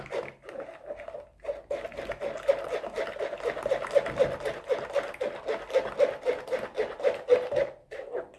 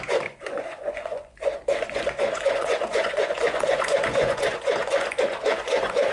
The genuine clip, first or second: first